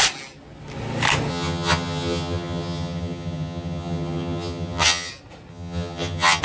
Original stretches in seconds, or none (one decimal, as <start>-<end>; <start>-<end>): 0.0-1.3; 5.1-5.5